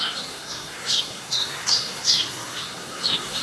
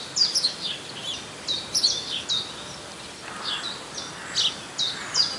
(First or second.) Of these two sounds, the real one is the second